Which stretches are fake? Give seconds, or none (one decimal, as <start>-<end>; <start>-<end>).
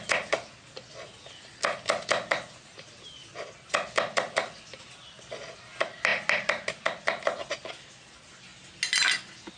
none